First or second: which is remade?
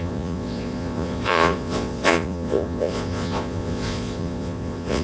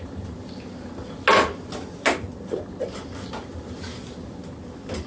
first